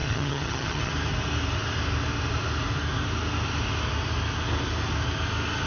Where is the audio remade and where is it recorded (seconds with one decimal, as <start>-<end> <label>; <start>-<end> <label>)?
0.0-0.9 remade; 0.9-5.7 recorded